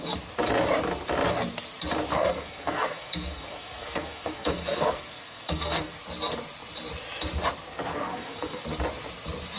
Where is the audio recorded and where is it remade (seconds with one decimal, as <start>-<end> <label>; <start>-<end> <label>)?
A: 0.0-2.1 recorded; 2.1-6.0 remade; 6.0-7.9 recorded; 7.9-8.6 remade; 8.6-9.6 recorded